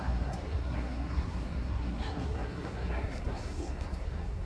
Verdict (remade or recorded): remade